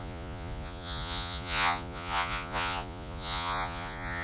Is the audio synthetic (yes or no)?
yes